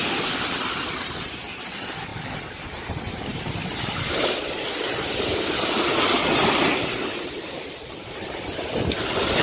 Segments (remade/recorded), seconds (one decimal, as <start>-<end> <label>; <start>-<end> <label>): 0.0-9.4 remade